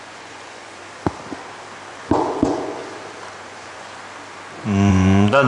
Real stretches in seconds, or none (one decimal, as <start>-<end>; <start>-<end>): 0.8-1.9; 2.8-3.4; 4.0-4.9